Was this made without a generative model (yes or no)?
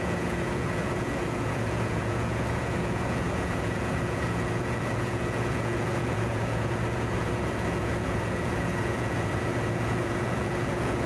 no